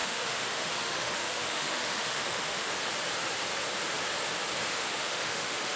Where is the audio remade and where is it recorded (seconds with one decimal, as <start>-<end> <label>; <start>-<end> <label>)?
0.0-2.7 remade; 2.7-4.7 recorded; 4.7-5.8 remade